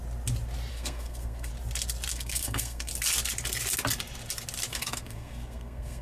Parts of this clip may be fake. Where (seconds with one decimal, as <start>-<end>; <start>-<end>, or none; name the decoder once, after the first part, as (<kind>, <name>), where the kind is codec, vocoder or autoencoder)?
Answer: 0.7-1.5 (codec, SNAC); 2.1-2.9; 4.7-6.0

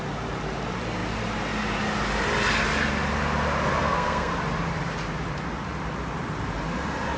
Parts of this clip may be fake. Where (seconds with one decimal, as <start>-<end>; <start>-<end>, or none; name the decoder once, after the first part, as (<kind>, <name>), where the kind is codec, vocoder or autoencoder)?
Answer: 3.8-4.4 (codec, SNAC)

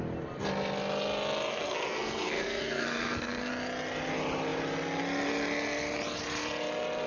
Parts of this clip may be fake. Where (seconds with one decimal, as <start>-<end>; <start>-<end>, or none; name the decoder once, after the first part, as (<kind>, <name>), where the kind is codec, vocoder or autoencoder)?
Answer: 1.5-3.5 (codec, SNAC)

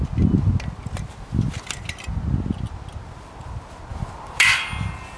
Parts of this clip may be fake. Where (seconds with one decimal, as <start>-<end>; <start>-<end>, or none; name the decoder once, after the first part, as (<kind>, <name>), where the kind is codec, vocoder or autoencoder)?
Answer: none

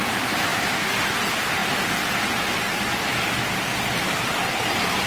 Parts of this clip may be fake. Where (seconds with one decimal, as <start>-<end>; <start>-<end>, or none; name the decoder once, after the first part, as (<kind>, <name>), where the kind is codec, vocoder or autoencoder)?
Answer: none

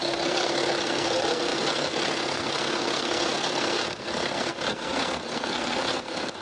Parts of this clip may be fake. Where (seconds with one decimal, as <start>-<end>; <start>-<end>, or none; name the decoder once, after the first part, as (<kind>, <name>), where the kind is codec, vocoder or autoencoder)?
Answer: 0.0-6.4 (codec, SNAC)

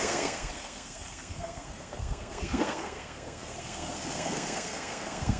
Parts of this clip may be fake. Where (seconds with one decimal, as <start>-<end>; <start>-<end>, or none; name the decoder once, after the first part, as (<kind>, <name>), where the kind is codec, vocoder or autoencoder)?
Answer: 0.0-5.4 (codec, SNAC)

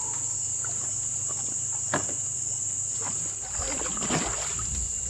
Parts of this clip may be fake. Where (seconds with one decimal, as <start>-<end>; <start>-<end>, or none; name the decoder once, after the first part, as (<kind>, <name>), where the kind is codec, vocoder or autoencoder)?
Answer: none